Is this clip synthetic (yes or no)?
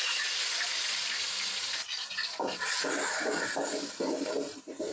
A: no